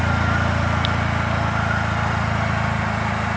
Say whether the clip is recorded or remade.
recorded